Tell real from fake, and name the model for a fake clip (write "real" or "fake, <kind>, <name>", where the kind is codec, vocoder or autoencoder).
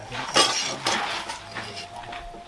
real